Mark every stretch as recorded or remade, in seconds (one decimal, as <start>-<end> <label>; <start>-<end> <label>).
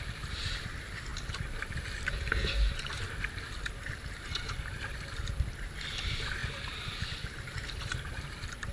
0.0-8.7 remade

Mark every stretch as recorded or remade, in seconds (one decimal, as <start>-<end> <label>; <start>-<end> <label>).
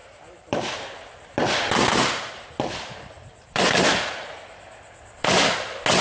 0.0-3.6 remade; 3.6-6.0 recorded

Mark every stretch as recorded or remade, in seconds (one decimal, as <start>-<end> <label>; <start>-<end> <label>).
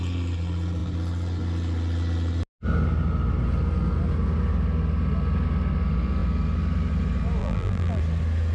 0.0-7.4 recorded; 7.4-8.0 remade; 8.0-8.5 recorded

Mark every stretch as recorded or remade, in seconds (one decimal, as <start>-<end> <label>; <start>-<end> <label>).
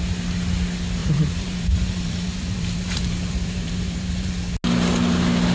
0.0-1.0 recorded; 1.0-4.3 remade; 4.3-5.5 recorded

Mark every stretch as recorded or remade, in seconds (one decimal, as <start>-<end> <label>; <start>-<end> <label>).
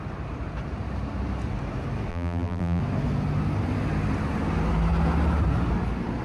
0.0-2.1 recorded; 2.1-2.8 remade; 2.8-6.2 recorded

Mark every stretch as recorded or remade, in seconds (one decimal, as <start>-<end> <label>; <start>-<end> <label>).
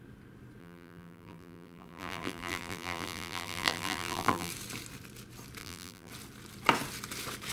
0.0-0.6 recorded; 0.6-4.5 remade; 4.5-5.6 recorded; 5.6-6.1 remade; 6.1-7.5 recorded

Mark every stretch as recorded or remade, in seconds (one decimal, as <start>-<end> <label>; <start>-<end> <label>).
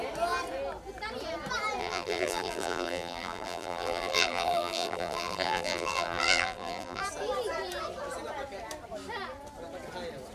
0.0-1.8 recorded; 1.8-7.0 remade; 7.0-10.3 recorded